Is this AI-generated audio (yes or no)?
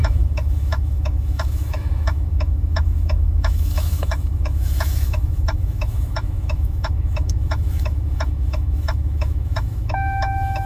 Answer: yes